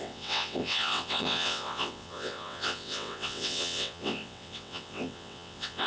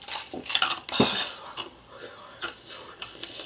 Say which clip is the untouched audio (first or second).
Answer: second